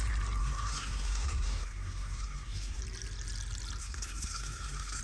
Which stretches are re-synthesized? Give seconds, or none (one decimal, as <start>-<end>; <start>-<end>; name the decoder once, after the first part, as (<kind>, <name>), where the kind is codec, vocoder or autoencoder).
0.4-2.8 (codec, SNAC); 3.8-5.0